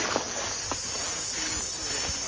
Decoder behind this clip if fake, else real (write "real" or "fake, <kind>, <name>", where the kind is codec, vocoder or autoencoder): real